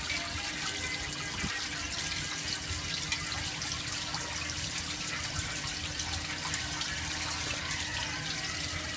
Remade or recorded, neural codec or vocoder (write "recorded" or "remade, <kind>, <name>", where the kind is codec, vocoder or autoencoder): recorded